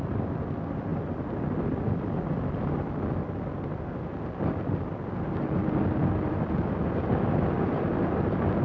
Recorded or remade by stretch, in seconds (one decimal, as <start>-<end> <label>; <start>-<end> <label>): 0.0-0.9 recorded; 0.9-2.6 remade; 2.6-4.6 recorded; 4.6-5.1 remade; 5.1-5.6 recorded; 5.6-6.6 remade; 6.6-8.6 recorded